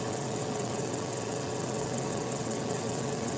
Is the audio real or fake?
fake